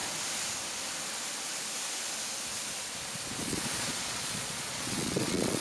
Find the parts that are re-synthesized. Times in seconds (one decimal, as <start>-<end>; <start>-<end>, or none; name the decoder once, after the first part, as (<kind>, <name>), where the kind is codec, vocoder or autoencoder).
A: 3.4-5.6 (vocoder, Vocos)